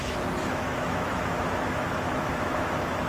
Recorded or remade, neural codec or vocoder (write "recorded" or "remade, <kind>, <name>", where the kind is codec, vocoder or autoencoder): remade, autoencoder, DAC-VAE